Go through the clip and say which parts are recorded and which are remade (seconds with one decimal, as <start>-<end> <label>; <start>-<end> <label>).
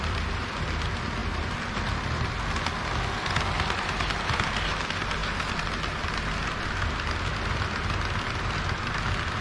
0.0-9.4 recorded